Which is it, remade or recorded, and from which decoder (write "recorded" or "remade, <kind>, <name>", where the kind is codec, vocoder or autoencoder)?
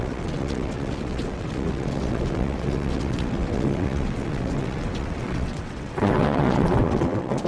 remade, vocoder, WaveNeXt